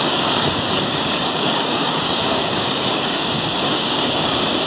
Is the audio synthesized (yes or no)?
yes